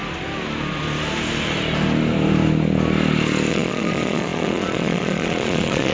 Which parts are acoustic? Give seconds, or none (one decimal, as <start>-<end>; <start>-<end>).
0.0-3.5

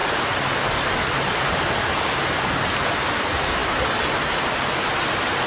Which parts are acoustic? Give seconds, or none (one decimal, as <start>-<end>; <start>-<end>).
0.0-5.5

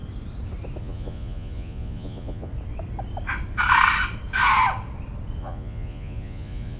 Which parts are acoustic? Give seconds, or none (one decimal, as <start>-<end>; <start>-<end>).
0.0-0.8; 2.5-5.4

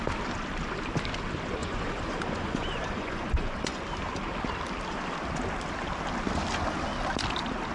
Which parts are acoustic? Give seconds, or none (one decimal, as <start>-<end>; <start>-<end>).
0.0-1.6; 3.8-7.7

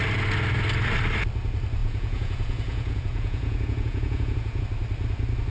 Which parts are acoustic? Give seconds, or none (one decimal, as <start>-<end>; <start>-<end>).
0.0-1.8; 4.6-5.5

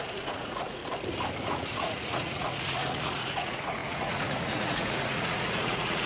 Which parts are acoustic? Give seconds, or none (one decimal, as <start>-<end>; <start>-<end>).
0.8-1.4